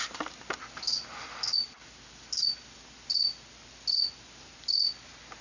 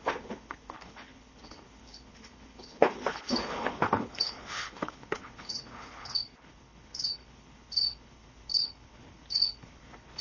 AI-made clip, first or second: second